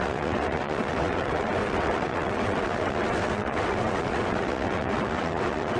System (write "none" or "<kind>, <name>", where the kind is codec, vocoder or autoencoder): vocoder, WaveNeXt